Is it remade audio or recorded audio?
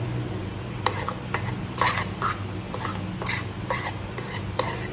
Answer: recorded